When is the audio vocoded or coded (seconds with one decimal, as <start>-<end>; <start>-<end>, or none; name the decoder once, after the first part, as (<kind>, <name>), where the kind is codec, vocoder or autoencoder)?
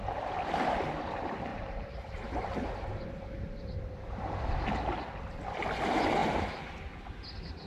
1.5-4.4 (vocoder, BigVGAN v2)